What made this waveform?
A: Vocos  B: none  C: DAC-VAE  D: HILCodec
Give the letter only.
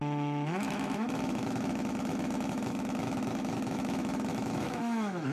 C